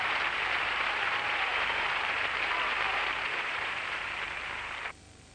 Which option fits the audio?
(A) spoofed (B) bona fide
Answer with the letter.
A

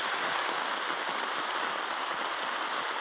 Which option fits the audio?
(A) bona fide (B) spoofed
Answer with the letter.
A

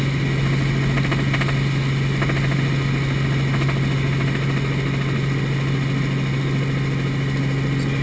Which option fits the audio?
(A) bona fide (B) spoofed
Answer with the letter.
A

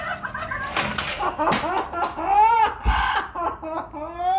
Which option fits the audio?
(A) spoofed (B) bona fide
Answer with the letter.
B